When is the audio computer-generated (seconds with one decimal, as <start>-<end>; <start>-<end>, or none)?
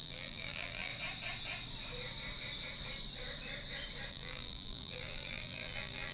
0.0-0.9; 4.1-6.1